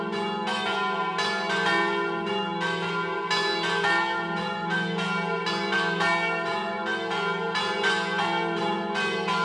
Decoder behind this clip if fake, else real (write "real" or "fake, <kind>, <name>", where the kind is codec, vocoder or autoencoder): real